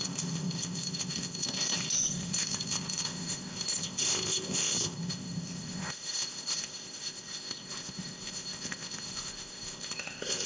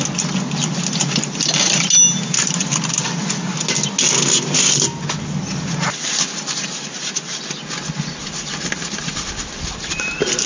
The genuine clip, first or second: second